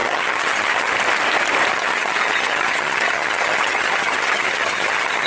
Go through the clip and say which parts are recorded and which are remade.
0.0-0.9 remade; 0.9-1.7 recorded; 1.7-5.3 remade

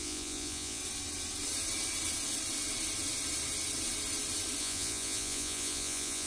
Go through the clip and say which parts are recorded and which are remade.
0.0-0.8 remade; 0.8-4.6 recorded; 4.6-6.3 remade

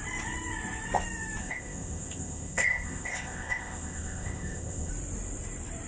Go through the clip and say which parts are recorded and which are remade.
0.0-1.4 recorded; 1.4-4.9 remade; 4.9-5.9 recorded

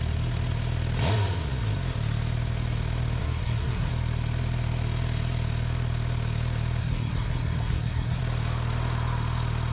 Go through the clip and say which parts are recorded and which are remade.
0.0-3.2 recorded; 3.2-3.9 remade; 3.9-6.8 recorded; 6.8-8.2 remade; 8.2-9.7 recorded

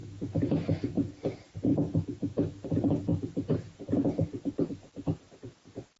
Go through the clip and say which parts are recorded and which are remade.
0.0-1.2 remade; 1.2-1.7 recorded; 1.7-2.5 remade; 2.5-6.0 recorded